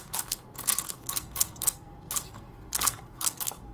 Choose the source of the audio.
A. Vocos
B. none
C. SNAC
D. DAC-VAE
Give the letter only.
C